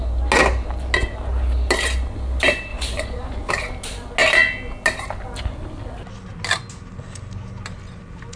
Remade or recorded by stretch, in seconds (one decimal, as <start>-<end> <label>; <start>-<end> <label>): 0.0-2.7 recorded; 2.7-3.5 remade; 3.5-8.4 recorded